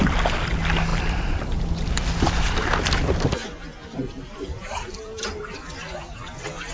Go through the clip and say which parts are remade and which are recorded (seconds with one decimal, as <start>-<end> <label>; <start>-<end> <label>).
0.0-0.9 recorded; 0.9-2.3 remade; 2.3-3.8 recorded; 3.8-5.4 remade; 5.4-6.7 recorded